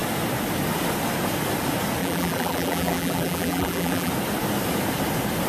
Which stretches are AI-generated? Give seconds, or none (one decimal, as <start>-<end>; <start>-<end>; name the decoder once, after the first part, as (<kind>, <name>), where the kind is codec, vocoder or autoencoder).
2.0-4.1 (vocoder, BigVGAN v2)